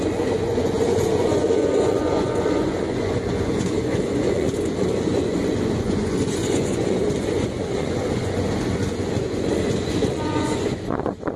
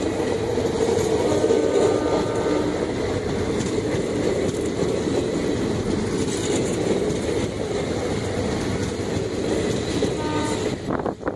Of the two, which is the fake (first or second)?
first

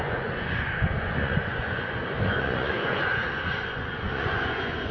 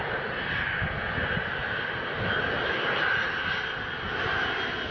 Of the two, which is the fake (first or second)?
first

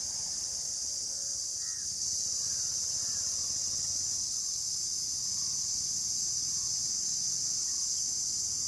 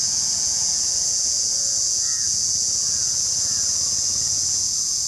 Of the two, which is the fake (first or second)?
second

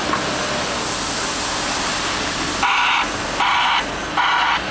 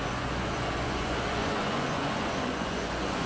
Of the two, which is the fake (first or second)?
second